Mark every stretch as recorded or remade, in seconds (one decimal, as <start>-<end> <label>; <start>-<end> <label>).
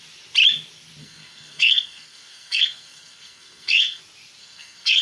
0.0-1.0 recorded; 1.0-4.0 remade; 4.0-4.4 recorded; 4.4-5.0 remade